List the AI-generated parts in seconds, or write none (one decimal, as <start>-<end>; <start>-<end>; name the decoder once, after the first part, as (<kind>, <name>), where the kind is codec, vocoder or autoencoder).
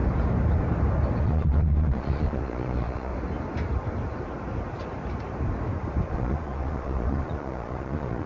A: 1.2-3.1 (vocoder, Vocos); 6.1-8.3